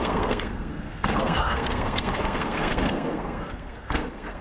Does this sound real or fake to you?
fake